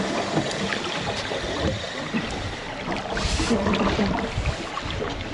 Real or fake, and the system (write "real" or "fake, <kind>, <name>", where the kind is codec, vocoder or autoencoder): real